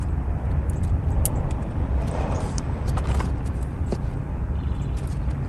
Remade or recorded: recorded